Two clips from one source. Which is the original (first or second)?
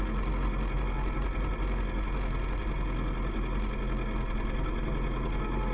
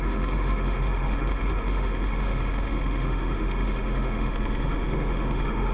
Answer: first